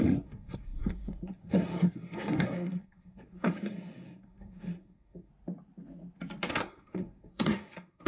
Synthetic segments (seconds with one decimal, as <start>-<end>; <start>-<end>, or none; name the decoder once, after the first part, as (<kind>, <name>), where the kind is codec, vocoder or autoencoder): 0.0-5.3 (codec, SNAC); 6.5-8.1